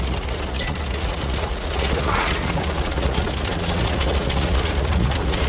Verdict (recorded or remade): remade